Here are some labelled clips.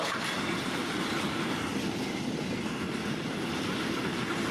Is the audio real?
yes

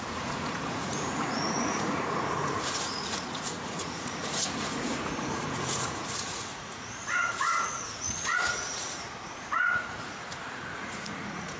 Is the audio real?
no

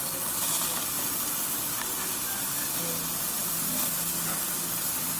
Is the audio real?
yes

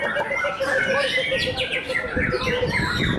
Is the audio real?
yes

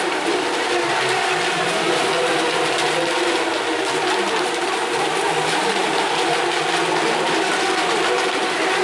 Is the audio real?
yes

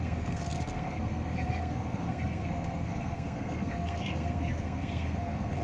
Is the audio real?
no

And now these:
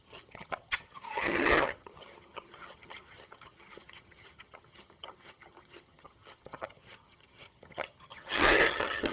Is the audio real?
no